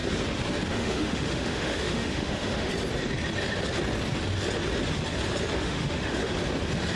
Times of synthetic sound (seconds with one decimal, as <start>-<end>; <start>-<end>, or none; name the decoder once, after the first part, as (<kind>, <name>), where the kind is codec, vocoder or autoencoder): 0.7-2.7 (autoencoder, DAC-VAE); 5.6-6.2